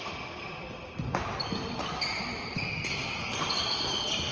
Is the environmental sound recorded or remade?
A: recorded